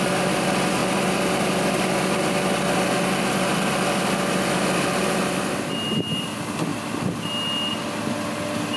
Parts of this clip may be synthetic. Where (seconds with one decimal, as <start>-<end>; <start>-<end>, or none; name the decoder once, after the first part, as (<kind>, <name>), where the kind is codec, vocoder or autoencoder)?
none